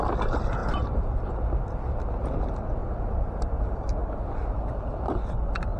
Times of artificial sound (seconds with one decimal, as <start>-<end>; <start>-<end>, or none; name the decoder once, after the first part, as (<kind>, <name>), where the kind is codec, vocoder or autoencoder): 0.6-1.3 (vocoder, BigVGAN v2); 2.8-3.3